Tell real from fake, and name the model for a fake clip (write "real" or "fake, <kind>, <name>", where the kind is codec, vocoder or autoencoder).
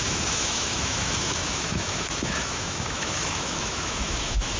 fake, autoencoder, DAC-VAE